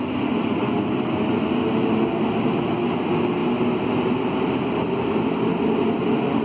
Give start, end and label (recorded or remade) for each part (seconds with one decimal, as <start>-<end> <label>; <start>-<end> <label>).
0.0-6.4 recorded